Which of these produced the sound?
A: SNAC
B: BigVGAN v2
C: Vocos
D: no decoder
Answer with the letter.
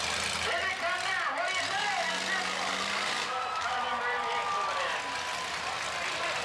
D